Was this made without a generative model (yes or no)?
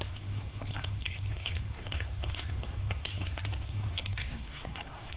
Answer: no